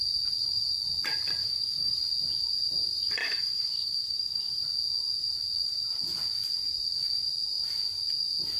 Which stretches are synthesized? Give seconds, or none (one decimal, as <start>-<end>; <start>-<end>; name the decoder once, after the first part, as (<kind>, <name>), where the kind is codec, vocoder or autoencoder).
1.4-2.0 (autoencoder, DAC-VAE); 3.2-4.6